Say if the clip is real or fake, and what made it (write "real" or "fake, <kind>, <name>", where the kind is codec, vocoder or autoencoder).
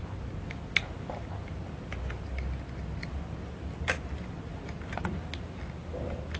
real